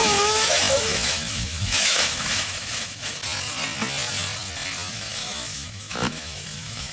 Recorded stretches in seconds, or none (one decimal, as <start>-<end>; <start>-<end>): 3.2-4.9